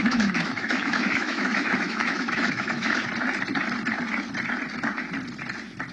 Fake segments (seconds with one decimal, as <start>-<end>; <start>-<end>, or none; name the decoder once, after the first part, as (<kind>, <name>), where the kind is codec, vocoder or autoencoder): 0.0-3.1 (autoencoder, DAC-VAE)